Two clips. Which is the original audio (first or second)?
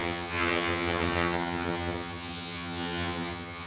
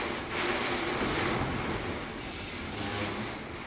second